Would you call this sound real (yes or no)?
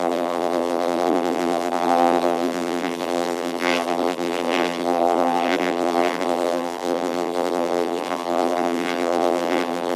no